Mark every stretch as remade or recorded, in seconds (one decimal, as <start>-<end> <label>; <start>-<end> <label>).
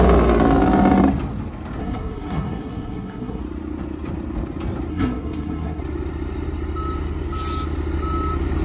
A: 0.0-1.8 recorded; 1.8-3.4 remade; 3.4-4.9 recorded; 4.9-5.8 remade; 5.8-8.6 recorded